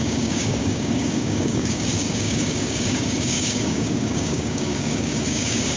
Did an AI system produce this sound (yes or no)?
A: yes